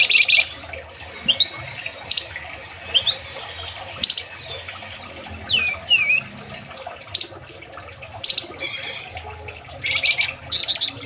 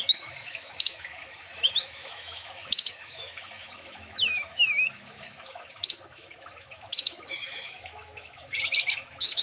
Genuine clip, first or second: first